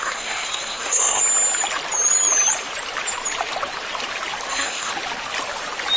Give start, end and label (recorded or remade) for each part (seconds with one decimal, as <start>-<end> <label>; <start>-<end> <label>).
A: 0.0-1.2 remade; 1.2-4.5 recorded; 4.5-4.9 remade; 4.9-6.0 recorded